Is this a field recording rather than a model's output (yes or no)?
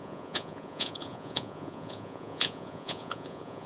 no